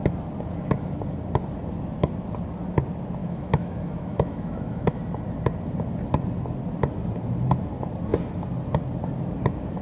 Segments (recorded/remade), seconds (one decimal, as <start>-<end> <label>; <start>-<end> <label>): 0.0-3.2 recorded; 3.2-5.0 remade; 5.0-9.8 recorded